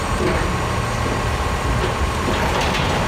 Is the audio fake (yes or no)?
no